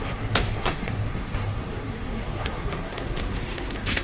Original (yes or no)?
no